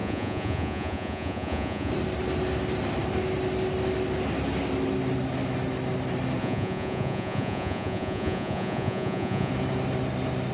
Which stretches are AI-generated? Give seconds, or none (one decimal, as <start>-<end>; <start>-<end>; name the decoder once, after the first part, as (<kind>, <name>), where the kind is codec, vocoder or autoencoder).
0.0-1.9 (vocoder, Vocos); 6.4-9.5